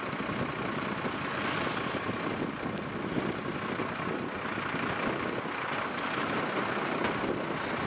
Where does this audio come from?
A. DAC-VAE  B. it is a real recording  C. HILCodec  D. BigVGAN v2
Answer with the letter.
B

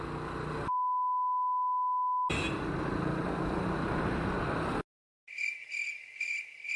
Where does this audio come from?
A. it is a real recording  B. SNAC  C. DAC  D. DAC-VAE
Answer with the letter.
A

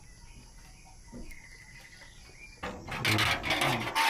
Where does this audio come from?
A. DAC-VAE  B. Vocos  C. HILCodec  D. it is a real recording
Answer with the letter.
D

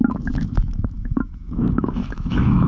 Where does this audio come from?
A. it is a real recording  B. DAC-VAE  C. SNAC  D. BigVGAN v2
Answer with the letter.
B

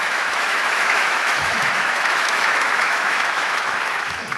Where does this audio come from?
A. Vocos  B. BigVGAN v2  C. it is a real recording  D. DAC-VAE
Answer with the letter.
D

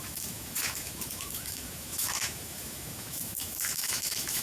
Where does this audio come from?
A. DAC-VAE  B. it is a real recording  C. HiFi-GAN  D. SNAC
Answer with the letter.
A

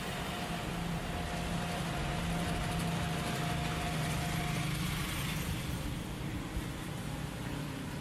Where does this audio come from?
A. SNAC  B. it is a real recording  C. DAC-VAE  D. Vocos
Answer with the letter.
B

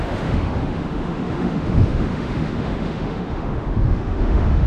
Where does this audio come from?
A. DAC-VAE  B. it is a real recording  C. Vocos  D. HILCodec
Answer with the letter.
A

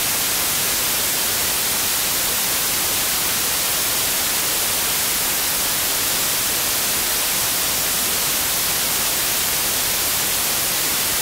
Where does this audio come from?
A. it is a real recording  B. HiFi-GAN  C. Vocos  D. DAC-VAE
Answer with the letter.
A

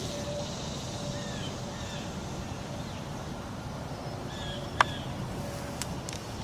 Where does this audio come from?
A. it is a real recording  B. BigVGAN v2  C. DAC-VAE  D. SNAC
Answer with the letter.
A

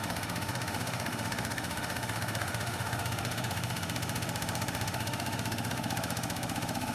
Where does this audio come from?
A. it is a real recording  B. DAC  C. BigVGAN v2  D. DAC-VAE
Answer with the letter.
D